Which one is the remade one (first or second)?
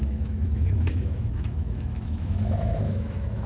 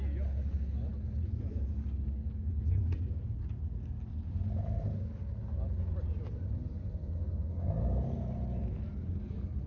first